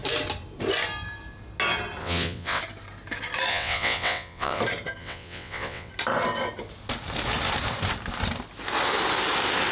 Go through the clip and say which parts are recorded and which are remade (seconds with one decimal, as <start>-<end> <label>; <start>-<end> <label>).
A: 0.0-2.0 recorded; 2.0-2.6 remade; 2.6-3.5 recorded; 3.5-4.6 remade; 4.6-5.0 recorded; 5.0-5.9 remade; 5.9-9.7 recorded